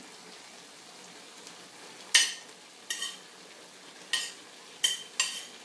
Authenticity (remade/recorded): recorded